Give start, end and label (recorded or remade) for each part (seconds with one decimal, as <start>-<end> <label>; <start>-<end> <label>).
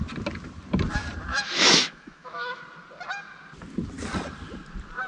0.0-1.3 recorded; 1.3-2.6 remade; 2.6-5.1 recorded